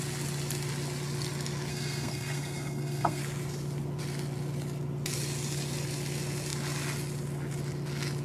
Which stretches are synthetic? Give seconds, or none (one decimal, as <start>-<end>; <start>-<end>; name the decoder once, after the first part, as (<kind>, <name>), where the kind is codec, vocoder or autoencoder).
1.7-3.2 (codec, SNAC)